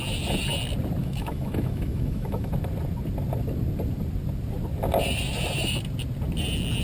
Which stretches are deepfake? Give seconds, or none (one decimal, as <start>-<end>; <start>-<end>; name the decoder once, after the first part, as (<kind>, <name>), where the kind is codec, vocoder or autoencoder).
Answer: 1.0-2.5 (autoencoder, DAC-VAE)

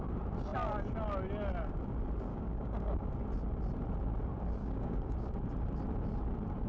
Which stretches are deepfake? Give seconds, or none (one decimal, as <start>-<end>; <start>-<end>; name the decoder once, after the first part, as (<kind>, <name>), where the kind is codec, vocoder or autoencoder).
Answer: 2.3-3.1 (codec, DAC); 4.6-5.3

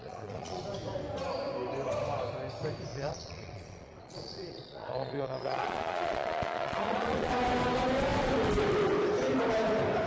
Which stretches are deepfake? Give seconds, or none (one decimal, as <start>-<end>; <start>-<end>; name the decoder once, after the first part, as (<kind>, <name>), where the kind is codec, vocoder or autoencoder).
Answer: 0.0-0.6 (vocoder, Vocos); 2.9-7.3

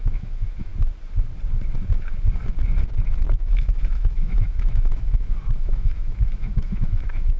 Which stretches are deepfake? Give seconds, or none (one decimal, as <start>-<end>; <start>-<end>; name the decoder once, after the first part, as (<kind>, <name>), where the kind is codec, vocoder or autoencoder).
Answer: 0.0-0.7 (autoencoder, DAC-VAE); 3.3-7.4